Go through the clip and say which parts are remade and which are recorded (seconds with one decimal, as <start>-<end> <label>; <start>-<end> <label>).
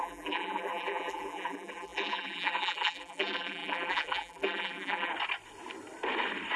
0.0-5.1 remade; 5.1-6.6 recorded